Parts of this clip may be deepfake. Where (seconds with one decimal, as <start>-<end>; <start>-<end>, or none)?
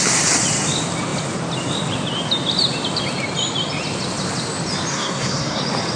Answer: 4.9-5.6